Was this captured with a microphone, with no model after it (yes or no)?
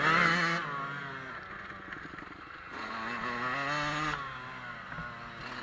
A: yes